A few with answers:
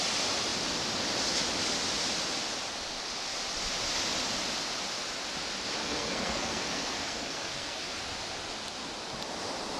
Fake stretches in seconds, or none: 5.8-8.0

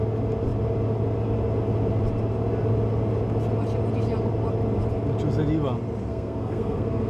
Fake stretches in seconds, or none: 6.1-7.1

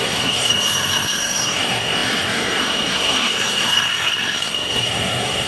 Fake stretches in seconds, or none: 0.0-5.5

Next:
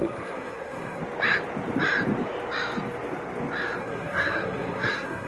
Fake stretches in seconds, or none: 0.0-1.0; 3.8-5.3